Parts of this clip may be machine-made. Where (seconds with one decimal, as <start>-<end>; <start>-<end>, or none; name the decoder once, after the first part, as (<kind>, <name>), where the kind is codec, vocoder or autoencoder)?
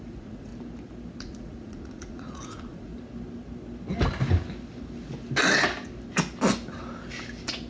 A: 0.0-0.5 (vocoder, Vocos); 1.2-2.9